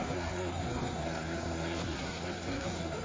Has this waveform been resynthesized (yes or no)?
yes